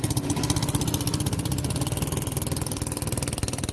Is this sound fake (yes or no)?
no